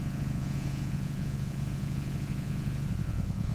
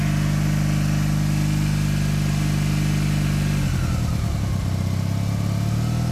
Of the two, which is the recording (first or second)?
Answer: second